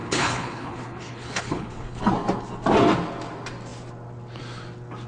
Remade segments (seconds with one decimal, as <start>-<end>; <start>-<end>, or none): 0.0-2.0